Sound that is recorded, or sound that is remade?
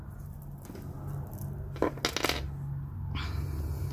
recorded